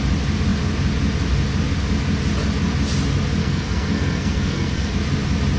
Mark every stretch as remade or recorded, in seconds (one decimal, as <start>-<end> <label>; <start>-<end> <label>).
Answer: 0.0-3.4 recorded; 3.4-4.9 remade; 4.9-5.6 recorded